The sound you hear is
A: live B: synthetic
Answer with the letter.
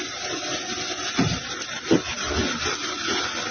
A